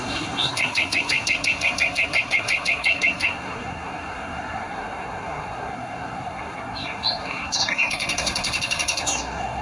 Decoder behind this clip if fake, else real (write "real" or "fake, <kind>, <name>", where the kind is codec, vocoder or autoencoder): fake, codec, SNAC